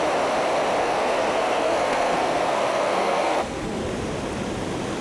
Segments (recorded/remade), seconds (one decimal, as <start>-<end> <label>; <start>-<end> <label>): 0.0-0.8 recorded; 0.8-3.8 remade; 3.8-5.0 recorded